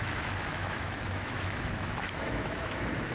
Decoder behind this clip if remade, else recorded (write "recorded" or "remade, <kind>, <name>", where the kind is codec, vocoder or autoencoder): remade, autoencoder, DAC-VAE